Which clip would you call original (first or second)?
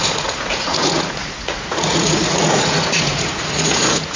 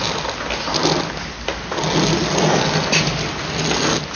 second